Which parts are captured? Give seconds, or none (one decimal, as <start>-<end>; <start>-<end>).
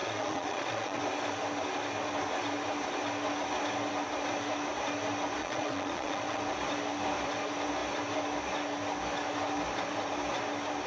1.0-5.4; 6.4-10.9